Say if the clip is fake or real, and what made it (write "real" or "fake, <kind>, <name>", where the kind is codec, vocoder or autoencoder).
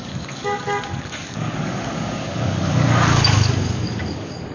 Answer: fake, codec, DAC